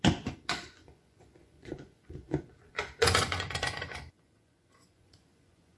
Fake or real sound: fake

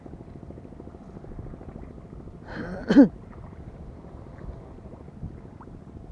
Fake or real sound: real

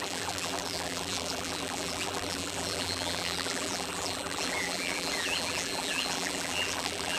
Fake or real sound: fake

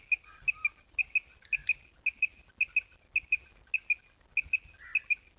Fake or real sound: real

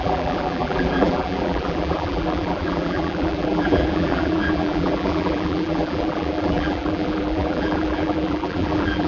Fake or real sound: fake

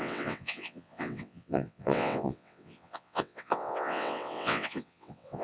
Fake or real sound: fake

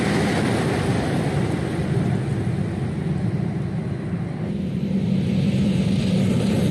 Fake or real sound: real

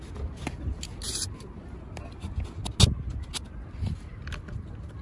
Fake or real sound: real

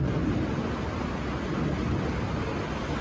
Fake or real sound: real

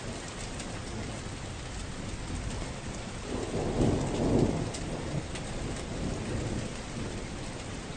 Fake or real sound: real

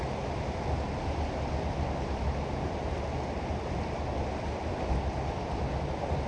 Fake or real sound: fake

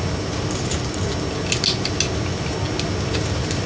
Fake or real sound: real